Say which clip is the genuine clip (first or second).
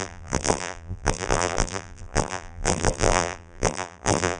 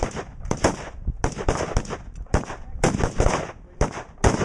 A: second